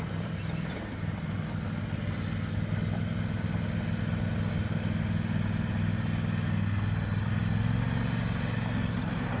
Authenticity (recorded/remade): recorded